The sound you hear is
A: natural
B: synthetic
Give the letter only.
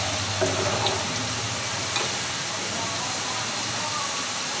A